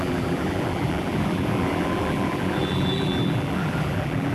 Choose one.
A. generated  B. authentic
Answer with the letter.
A